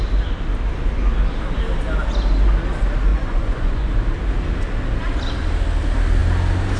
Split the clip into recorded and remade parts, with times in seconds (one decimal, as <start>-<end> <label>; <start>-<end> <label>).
0.0-3.1 recorded; 3.1-3.9 remade; 3.9-6.8 recorded